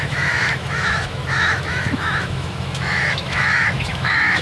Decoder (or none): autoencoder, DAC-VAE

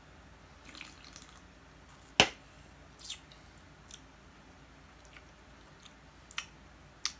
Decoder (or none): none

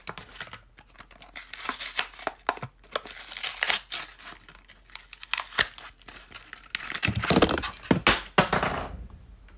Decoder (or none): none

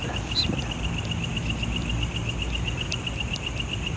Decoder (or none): none